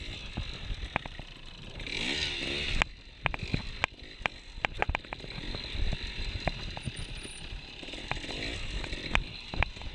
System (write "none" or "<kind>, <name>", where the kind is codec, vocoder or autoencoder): none